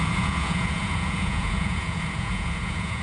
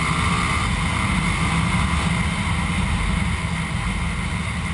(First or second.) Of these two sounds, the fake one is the first